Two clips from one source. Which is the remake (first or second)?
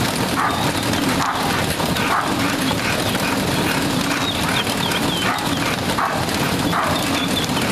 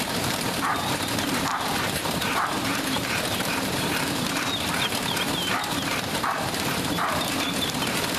second